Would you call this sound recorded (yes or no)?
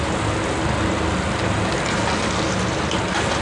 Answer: yes